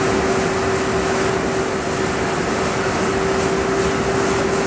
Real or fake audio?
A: real